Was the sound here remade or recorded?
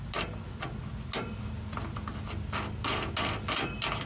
recorded